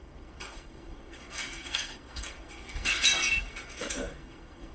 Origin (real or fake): fake